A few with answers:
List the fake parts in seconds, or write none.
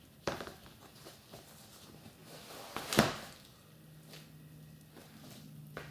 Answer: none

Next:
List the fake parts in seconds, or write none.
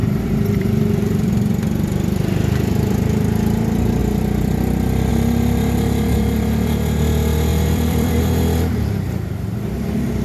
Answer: 0.0-1.3 (vocoder, BigVGAN v2); 7.5-8.3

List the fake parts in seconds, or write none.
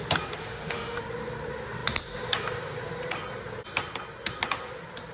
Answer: 0.4-1.0 (autoencoder, DAC-VAE)